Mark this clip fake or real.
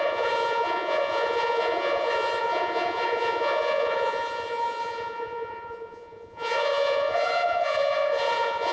fake